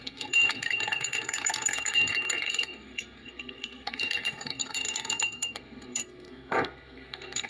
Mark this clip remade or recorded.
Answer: remade